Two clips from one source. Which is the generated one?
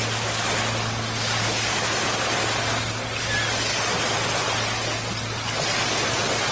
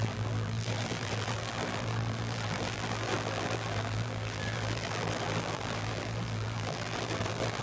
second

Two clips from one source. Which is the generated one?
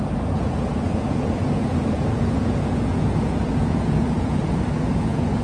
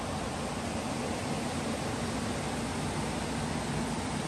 first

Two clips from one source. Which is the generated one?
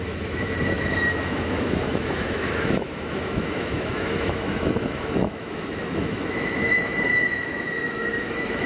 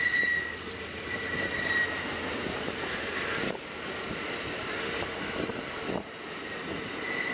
first